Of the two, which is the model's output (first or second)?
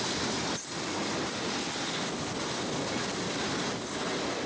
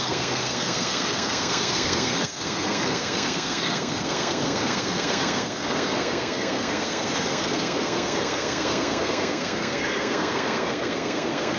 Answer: second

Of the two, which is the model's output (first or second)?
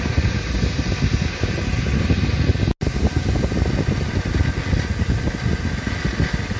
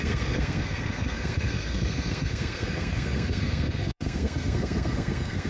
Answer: second